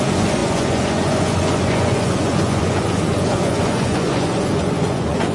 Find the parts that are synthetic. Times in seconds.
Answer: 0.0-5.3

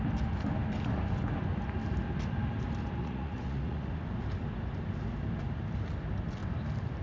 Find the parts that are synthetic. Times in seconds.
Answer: 3.0-3.9

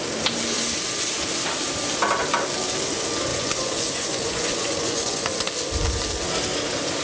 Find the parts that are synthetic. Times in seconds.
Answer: 3.3-5.5

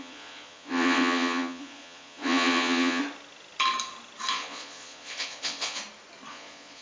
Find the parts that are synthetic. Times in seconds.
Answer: 0.0-3.0; 4.3-5.8; 6.3-6.8